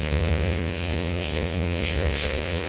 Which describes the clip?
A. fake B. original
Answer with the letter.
A